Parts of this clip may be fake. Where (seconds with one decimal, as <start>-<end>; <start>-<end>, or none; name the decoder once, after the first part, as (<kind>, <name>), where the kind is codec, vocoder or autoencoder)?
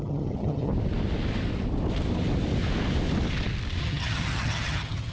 0.0-0.7 (vocoder, HiFi-GAN); 3.8-5.1